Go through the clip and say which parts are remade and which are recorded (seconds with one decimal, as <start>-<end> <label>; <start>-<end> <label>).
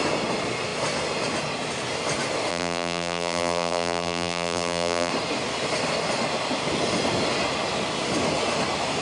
0.0-2.5 recorded; 2.5-5.1 remade; 5.1-9.0 recorded